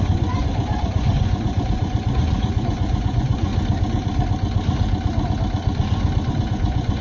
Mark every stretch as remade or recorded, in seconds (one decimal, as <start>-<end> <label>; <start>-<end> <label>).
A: 0.0-3.5 remade; 3.5-6.3 recorded; 6.3-7.0 remade